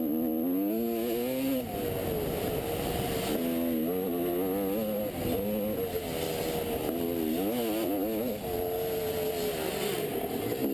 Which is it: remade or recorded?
recorded